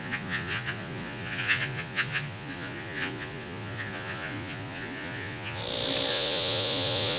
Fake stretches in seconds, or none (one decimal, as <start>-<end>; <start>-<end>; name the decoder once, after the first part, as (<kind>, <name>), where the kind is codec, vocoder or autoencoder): 0.0-5.6 (vocoder, Vocos); 6.1-7.2